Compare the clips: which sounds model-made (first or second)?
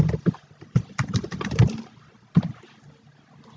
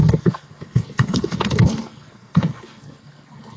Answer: second